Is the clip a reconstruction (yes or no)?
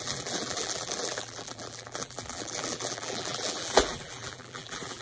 yes